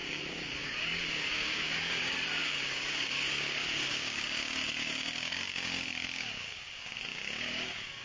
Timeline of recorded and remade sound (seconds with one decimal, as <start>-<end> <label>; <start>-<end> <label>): 0.0-8.0 remade